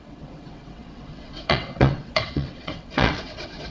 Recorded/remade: remade